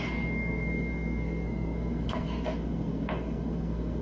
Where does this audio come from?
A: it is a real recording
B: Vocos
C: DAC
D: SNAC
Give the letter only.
D